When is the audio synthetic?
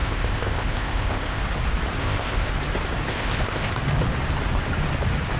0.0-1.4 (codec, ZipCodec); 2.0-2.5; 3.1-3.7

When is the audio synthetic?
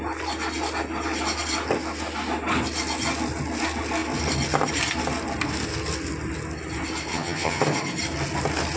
7.1-7.6 (vocoder, HiFi-GAN)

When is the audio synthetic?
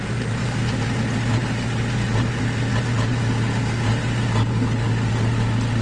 none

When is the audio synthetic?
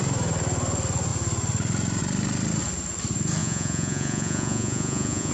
3.4-5.3 (vocoder, Vocos)